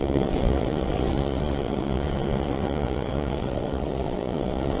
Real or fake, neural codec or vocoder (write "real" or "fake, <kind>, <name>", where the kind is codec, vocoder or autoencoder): fake, vocoder, WaveNeXt